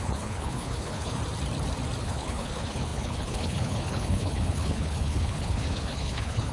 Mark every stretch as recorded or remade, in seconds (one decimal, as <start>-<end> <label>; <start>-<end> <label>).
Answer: 0.0-1.2 remade; 1.2-2.0 recorded; 2.0-6.5 remade